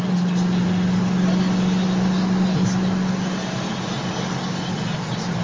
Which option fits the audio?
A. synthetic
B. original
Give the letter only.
B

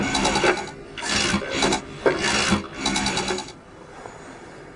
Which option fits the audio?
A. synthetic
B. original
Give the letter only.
B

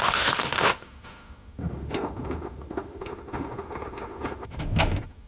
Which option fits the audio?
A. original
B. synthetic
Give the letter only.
B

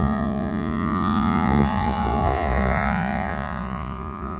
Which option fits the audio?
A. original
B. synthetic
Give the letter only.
B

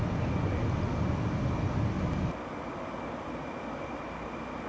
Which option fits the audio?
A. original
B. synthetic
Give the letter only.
A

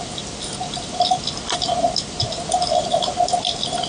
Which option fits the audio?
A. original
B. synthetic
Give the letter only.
A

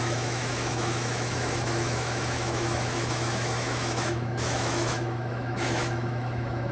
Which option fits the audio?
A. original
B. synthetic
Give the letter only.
B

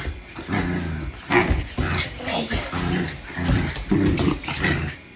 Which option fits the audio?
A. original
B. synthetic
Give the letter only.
A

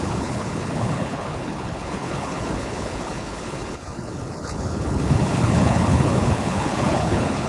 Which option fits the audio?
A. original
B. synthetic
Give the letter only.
B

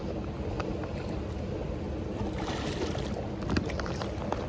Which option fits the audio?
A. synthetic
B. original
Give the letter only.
B